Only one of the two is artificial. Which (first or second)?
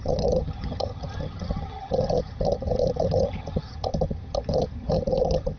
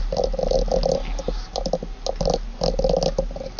first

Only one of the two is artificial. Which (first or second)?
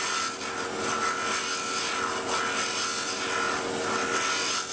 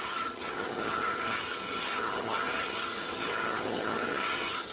second